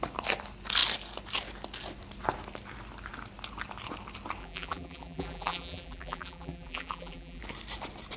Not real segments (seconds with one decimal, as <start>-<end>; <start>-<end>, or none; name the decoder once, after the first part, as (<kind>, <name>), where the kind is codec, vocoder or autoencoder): 4.4-7.4 (vocoder, BigVGAN v2)